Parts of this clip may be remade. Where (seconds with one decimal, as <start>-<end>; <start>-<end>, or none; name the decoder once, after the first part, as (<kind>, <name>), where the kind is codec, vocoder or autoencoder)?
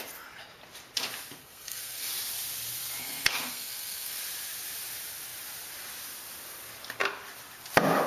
1.4-2.1 (codec, SNAC); 3.0-4.2